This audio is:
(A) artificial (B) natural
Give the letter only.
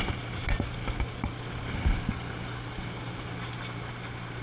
B